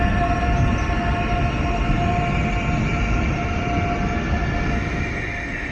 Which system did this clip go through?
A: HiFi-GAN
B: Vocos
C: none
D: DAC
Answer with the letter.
C